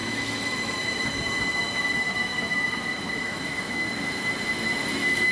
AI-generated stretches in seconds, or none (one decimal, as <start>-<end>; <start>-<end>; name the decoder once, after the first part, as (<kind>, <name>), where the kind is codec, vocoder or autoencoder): 0.0-5.3 (autoencoder, DAC-VAE)